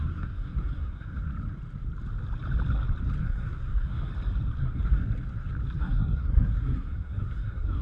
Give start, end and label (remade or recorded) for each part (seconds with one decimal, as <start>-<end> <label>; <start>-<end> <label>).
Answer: 0.0-1.3 remade; 1.3-3.2 recorded; 3.2-4.1 remade; 4.1-4.6 recorded; 4.6-5.0 remade; 5.0-5.8 recorded; 5.8-7.8 remade